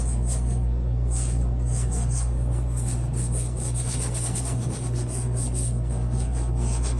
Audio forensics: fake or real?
fake